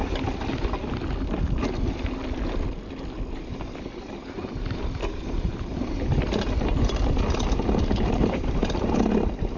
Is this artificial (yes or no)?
no